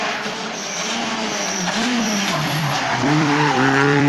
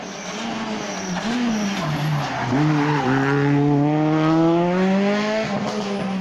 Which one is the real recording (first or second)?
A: second